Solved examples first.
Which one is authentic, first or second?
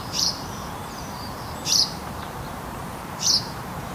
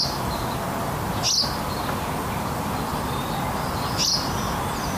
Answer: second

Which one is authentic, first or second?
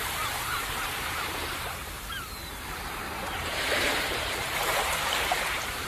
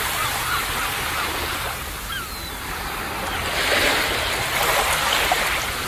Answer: second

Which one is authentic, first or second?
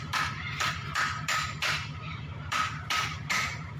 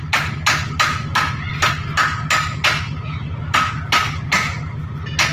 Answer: second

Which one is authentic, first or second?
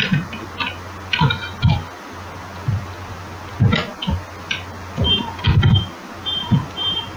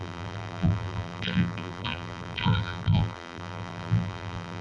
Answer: first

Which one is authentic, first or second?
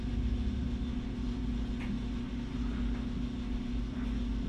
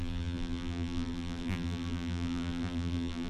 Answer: first